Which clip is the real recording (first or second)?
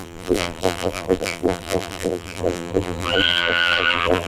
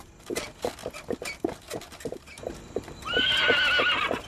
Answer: second